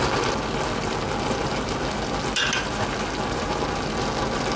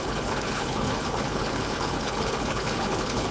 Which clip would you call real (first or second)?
first